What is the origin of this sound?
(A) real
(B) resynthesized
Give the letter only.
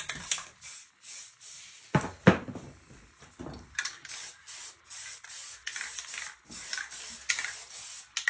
A